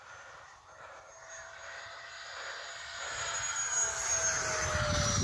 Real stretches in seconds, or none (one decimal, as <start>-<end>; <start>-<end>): 0.0-5.2